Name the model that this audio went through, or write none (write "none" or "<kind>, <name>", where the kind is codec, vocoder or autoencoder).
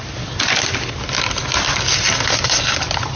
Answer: none